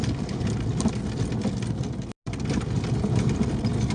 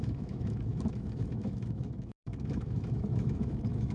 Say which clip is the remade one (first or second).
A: second